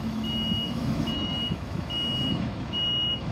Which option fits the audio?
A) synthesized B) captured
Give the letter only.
A